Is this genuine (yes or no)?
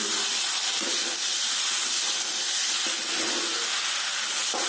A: yes